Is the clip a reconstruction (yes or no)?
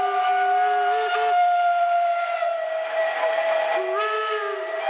no